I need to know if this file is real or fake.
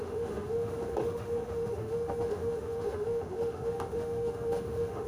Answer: fake